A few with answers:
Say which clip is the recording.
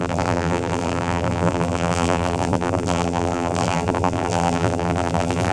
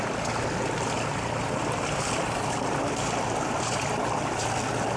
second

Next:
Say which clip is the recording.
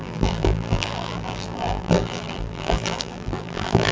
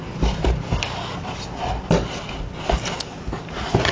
second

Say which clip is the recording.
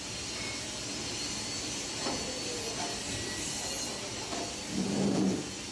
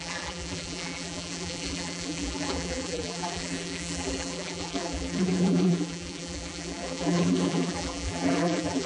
first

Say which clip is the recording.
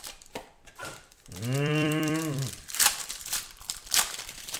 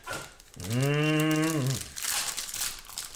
second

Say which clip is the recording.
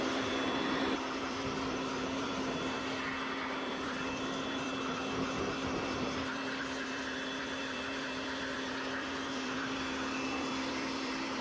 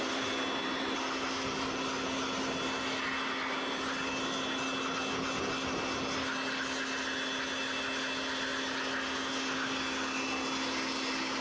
second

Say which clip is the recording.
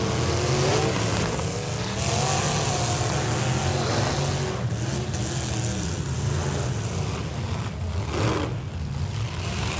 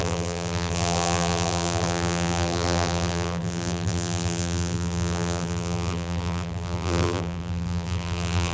first